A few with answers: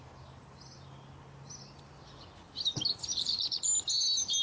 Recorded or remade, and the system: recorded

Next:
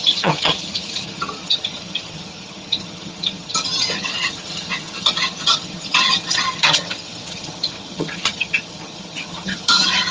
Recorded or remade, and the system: remade, vocoder, HiFi-GAN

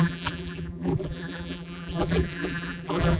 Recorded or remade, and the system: remade, vocoder, BigVGAN v2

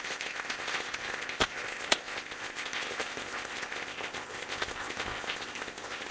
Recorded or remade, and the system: remade, codec, ZipCodec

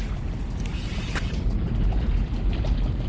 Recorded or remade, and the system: recorded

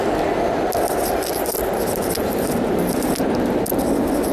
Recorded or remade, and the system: recorded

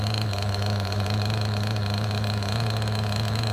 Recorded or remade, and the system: remade, autoencoder, DAC-VAE